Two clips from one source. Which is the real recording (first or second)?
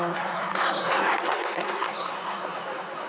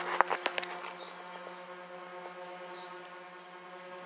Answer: second